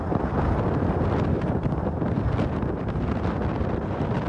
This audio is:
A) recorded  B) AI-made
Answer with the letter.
B